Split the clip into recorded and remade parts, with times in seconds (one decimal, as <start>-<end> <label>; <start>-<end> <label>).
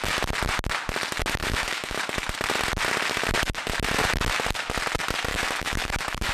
0.0-1.4 recorded; 1.4-2.0 remade; 2.0-5.3 recorded; 5.3-6.3 remade